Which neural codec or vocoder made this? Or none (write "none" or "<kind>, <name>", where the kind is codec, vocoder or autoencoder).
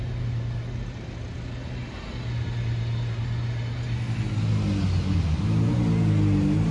none